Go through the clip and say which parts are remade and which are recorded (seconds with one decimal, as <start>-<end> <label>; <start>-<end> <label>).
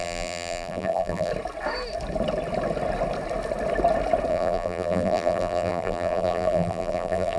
0.0-1.3 remade; 1.3-4.3 recorded; 4.3-7.4 remade